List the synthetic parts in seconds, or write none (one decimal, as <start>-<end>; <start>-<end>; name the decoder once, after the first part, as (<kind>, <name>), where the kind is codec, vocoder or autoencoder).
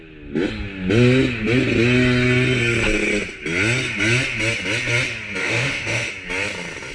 5.4-6.1 (autoencoder, DAC-VAE)